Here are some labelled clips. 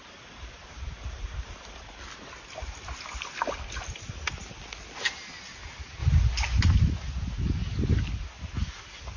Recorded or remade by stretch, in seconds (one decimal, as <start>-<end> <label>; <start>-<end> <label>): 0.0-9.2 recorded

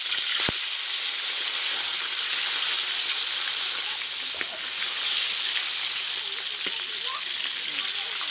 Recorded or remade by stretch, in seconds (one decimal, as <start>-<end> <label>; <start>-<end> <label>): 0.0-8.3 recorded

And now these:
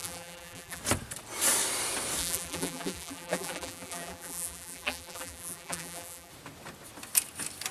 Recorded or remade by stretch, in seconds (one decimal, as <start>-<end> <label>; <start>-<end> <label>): 0.0-0.8 remade; 0.8-2.2 recorded; 2.2-6.3 remade; 6.3-7.7 recorded

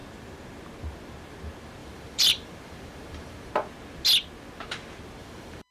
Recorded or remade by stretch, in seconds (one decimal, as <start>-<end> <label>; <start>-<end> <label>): 0.0-1.8 recorded; 1.8-3.5 remade; 3.5-5.2 recorded; 5.2-5.7 remade

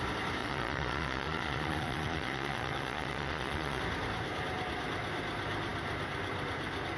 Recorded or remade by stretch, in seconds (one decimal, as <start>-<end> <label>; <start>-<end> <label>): 0.0-0.4 recorded; 0.4-3.8 remade; 3.8-7.0 recorded